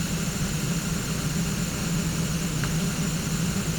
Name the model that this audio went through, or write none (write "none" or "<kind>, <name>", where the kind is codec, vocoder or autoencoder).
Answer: none